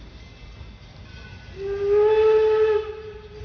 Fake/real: real